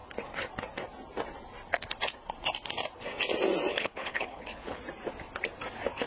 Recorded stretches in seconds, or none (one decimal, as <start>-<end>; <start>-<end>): 0.0-3.7; 4.8-6.1